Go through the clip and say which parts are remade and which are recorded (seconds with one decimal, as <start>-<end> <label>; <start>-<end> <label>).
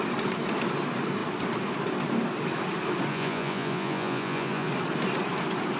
0.0-3.1 recorded; 3.1-4.7 remade; 4.7-5.8 recorded